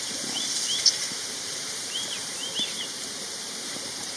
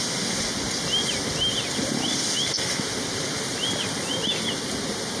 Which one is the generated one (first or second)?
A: first